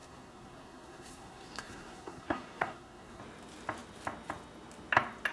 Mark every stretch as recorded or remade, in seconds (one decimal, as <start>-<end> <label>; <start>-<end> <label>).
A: 0.0-3.2 remade; 3.2-5.3 recorded